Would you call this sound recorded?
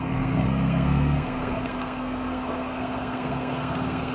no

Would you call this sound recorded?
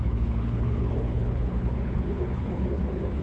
no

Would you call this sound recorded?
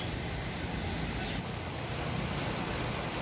yes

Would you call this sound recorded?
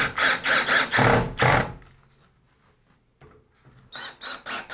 yes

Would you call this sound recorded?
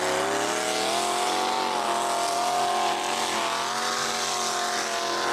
yes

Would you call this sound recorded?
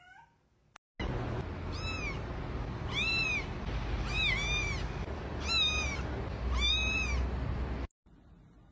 yes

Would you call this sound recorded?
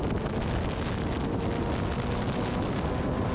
yes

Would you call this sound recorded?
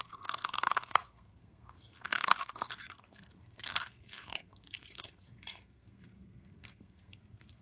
no